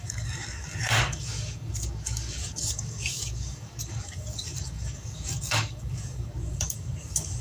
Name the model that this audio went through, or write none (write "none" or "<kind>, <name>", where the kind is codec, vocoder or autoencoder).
codec, DAC